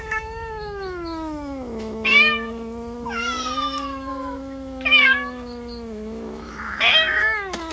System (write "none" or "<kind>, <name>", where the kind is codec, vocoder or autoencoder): autoencoder, DAC-VAE